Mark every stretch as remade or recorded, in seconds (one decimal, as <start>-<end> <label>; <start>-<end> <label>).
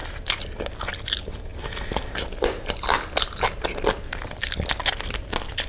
0.0-5.7 recorded